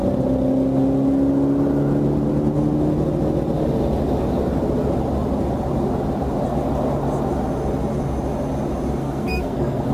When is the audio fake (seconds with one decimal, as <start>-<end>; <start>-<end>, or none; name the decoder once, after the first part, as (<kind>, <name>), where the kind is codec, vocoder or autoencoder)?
9.0-9.9 (codec, SNAC)